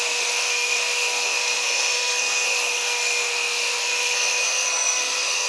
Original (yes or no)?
no